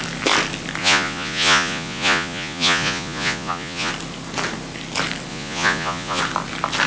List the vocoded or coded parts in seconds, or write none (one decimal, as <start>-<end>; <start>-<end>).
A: 0.8-3.9; 5.3-6.2